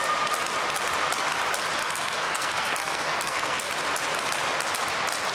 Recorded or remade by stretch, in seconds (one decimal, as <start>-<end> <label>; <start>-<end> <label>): 0.0-1.8 recorded; 1.8-3.7 remade; 3.7-5.3 recorded